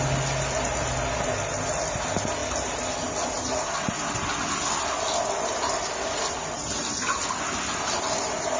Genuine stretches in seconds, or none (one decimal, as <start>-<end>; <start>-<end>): 0.0-8.6